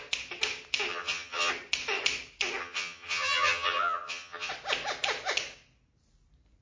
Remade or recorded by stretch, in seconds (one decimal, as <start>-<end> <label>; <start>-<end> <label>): 0.0-0.9 recorded; 0.9-1.5 remade; 1.5-2.6 recorded; 2.6-4.5 remade; 4.5-6.6 recorded

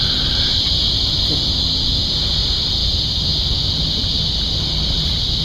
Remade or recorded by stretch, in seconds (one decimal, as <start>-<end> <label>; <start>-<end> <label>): 0.0-5.4 recorded

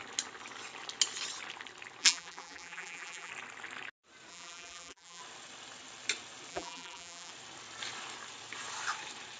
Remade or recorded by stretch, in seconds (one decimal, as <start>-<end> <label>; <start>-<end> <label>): 0.0-2.0 recorded; 2.0-3.3 remade; 3.3-4.3 recorded; 4.3-5.2 remade; 5.2-6.5 recorded; 6.5-7.3 remade; 7.3-9.4 recorded